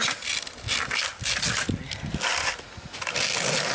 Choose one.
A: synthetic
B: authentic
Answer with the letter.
B